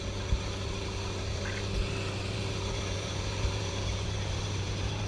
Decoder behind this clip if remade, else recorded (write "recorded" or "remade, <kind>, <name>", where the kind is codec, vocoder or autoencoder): remade, vocoder, BigVGAN v2